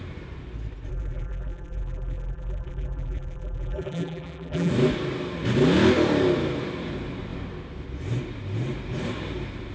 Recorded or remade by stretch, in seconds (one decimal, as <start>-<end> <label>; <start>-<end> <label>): 0.0-0.9 recorded; 0.9-4.7 remade; 4.7-9.7 recorded